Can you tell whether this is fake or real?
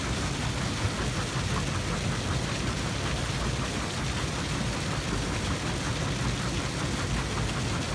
real